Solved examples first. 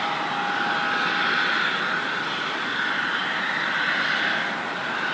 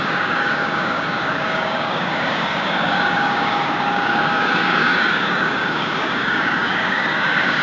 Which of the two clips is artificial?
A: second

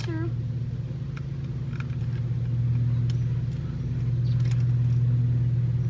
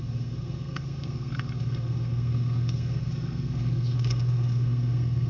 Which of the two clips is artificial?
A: second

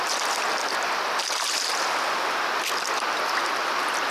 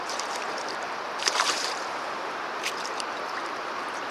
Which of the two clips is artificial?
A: second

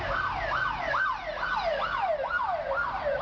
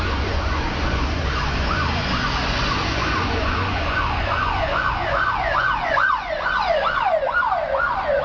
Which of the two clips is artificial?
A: second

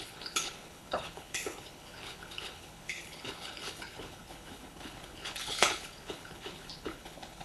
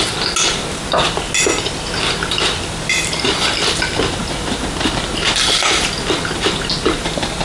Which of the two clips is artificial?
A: first